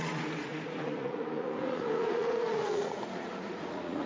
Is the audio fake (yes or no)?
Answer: yes